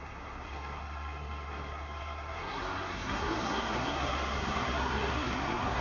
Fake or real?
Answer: fake